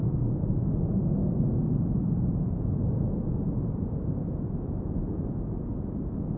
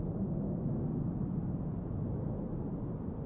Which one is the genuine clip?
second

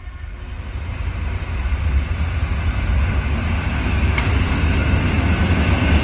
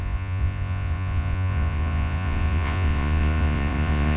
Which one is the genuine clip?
first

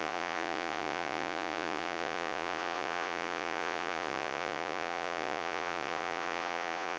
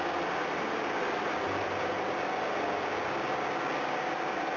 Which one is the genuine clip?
second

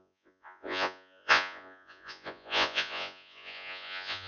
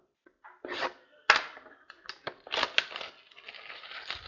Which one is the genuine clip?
second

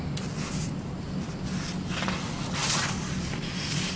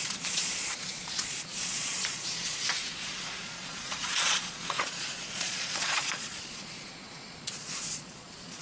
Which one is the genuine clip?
first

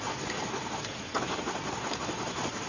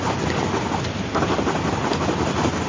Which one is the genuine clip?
second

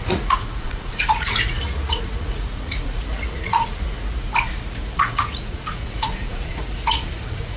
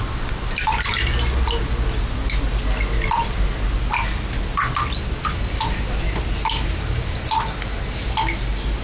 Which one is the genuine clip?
second